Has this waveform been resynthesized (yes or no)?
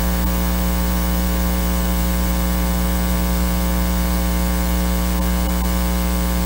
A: no